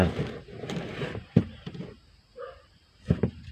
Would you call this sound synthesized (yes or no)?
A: yes